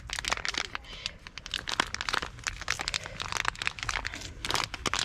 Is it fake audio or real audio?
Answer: real